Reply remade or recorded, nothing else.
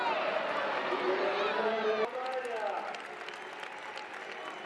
recorded